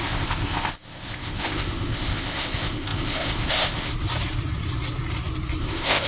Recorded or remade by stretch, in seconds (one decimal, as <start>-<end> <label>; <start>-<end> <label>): 0.0-3.9 remade; 3.9-5.6 recorded; 5.6-6.1 remade